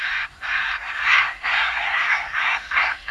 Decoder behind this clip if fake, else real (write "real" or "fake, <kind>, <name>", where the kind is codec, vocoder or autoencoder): fake, codec, SNAC